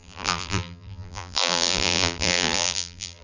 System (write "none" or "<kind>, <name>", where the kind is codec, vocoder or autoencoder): vocoder, BigVGAN v2